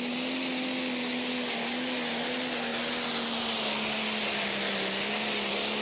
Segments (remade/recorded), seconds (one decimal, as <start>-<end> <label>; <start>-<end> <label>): 0.0-5.8 recorded